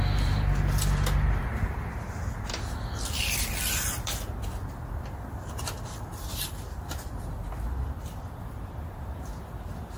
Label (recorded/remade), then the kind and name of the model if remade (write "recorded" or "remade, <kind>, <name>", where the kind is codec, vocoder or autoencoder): recorded